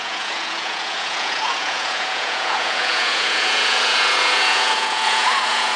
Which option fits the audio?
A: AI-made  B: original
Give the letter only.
A